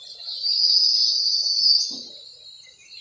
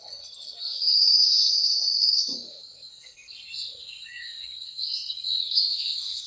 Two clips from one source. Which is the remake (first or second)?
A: second